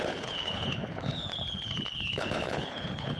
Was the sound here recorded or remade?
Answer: remade